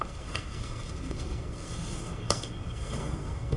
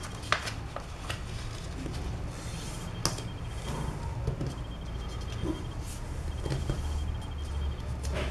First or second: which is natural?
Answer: second